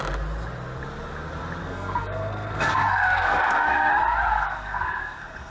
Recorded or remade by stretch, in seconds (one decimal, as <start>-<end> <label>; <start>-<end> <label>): 0.0-1.6 recorded; 1.6-3.9 remade; 3.9-4.3 recorded; 4.3-5.5 remade

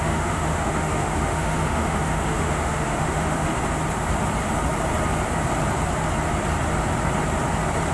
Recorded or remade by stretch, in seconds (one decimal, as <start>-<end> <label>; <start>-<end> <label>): 0.0-3.5 remade; 3.5-7.9 recorded